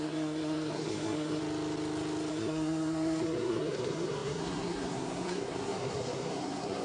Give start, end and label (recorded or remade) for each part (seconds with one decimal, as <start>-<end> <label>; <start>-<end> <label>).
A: 0.0-1.4 remade; 1.4-2.3 recorded; 2.3-6.8 remade

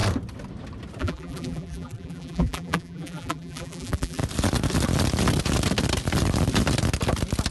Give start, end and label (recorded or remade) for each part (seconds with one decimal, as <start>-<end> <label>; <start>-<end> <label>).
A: 0.0-1.0 recorded; 1.0-4.2 remade; 4.2-7.5 recorded

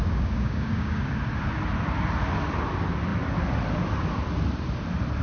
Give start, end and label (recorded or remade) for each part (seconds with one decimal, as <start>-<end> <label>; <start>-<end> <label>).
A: 0.0-1.2 remade; 1.2-5.2 recorded

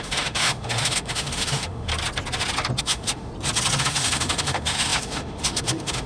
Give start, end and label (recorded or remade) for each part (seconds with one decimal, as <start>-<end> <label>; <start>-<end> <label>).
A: 0.0-1.9 remade; 1.9-2.8 recorded; 2.8-3.3 remade; 3.3-3.8 recorded; 3.8-6.1 remade

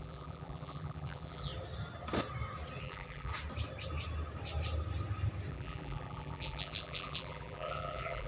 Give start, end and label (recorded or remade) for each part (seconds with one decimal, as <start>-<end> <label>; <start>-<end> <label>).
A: 0.0-1.5 remade; 1.5-2.8 recorded; 2.8-3.3 remade; 3.3-5.5 recorded; 5.5-8.3 remade

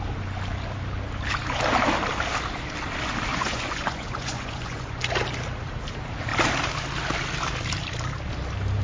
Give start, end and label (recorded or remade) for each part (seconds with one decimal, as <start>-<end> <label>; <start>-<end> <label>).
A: 0.0-3.3 recorded; 3.3-5.0 remade; 5.0-8.8 recorded

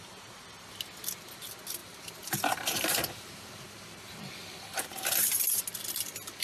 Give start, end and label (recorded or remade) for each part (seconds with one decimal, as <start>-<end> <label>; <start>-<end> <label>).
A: 0.0-1.8 recorded; 1.8-5.6 remade; 5.6-6.4 recorded

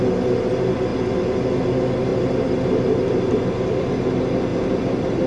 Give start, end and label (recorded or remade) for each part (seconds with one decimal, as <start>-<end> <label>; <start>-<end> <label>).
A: 0.0-2.1 recorded; 2.1-3.9 remade; 3.9-4.5 recorded; 4.5-5.3 remade